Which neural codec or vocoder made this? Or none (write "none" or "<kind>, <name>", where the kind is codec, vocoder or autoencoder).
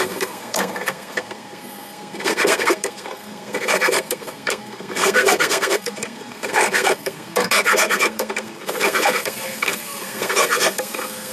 codec, SNAC